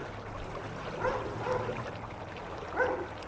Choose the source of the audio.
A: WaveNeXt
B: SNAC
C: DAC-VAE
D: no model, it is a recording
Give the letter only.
D